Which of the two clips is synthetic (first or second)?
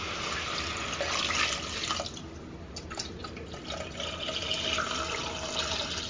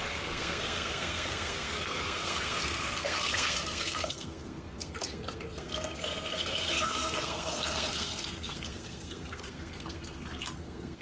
second